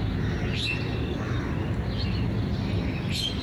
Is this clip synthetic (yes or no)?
no